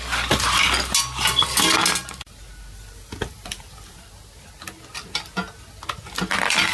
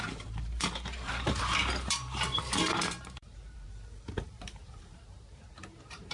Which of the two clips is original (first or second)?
first